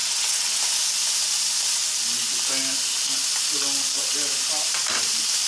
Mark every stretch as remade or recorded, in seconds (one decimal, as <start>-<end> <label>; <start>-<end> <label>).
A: 0.0-0.6 remade; 0.6-5.5 recorded